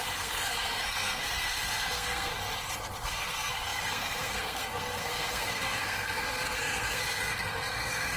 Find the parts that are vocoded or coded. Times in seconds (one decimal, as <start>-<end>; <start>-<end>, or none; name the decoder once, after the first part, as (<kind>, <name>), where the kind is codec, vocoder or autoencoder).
0.0-2.3 (codec, SNAC); 3.0-8.2